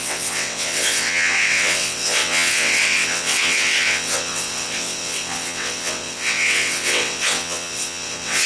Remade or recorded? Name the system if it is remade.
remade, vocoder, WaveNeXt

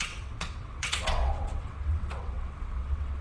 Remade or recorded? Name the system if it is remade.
remade, vocoder, WaveNeXt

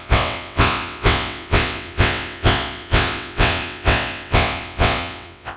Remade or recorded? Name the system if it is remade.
remade, vocoder, WaveNeXt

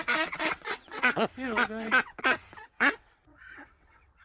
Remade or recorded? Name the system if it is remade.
remade, vocoder, WaveNeXt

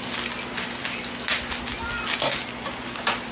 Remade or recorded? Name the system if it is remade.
recorded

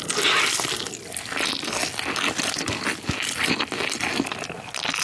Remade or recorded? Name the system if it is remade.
recorded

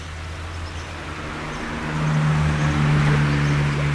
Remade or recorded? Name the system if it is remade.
recorded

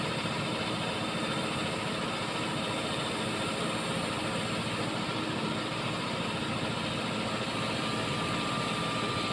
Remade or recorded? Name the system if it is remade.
recorded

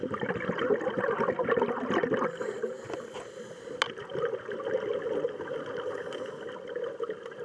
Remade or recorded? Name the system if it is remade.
recorded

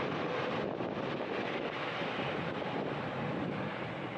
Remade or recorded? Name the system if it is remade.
recorded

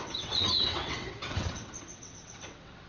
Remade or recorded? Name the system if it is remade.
remade, vocoder, WaveNeXt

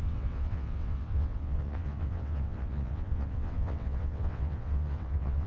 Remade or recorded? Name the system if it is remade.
remade, vocoder, WaveNeXt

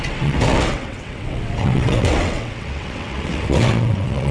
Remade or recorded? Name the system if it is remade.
remade, vocoder, WaveNeXt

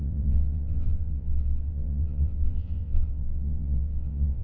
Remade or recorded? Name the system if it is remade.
remade, vocoder, WaveNeXt